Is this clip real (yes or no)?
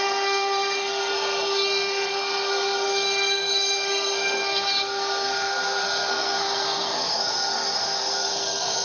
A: no